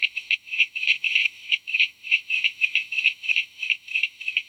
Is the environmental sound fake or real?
fake